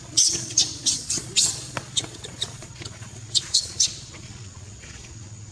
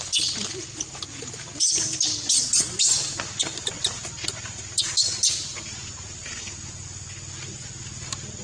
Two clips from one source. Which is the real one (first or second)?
second